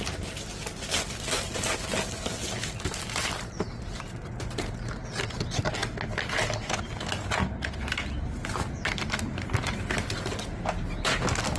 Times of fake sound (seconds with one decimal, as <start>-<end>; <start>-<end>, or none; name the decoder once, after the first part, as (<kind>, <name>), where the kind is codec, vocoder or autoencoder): none